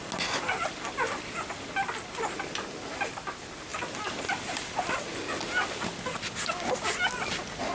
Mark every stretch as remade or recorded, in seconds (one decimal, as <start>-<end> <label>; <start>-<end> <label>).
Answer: 0.0-7.7 recorded